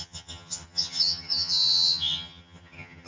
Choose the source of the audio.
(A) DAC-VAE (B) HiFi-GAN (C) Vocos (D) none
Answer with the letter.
B